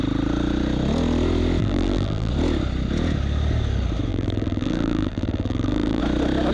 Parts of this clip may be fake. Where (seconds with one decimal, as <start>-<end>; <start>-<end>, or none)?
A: 1.6-2.3; 4.1-6.0